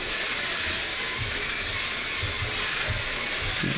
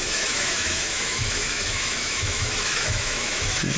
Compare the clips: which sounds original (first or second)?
first